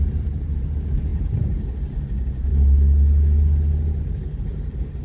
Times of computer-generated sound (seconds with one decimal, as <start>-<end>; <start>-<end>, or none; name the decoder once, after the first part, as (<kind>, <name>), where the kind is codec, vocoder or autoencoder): 0.0-2.5 (vocoder, BigVGAN v2); 4.0-5.0